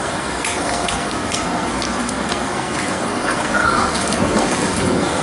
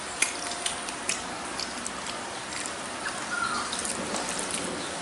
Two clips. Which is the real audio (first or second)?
second